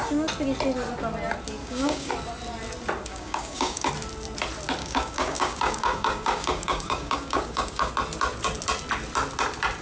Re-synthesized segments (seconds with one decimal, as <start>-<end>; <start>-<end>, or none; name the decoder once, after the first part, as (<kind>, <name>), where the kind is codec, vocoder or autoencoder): 1.6-2.1 (codec, DAC); 3.1-3.9; 4.8-7.9